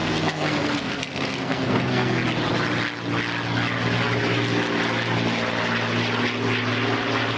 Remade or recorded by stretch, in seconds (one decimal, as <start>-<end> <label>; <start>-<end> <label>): 0.0-2.2 remade; 2.2-7.4 recorded